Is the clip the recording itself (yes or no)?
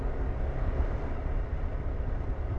yes